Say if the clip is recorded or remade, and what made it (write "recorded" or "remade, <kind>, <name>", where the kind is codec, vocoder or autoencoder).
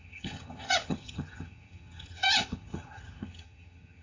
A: remade, vocoder, HiFi-GAN